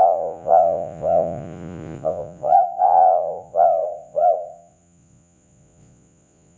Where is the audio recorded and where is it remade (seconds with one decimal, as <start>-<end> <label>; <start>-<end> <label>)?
0.0-6.6 remade